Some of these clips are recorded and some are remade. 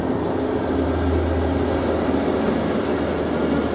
recorded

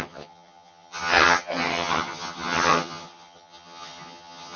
remade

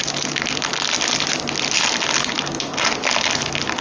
recorded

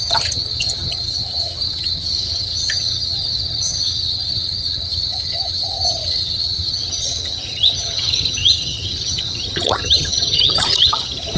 remade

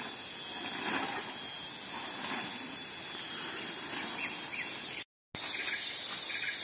recorded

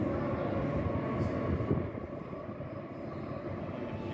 recorded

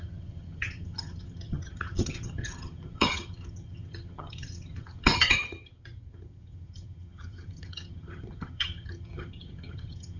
remade